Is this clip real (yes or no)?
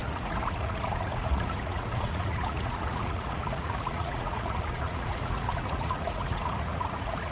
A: no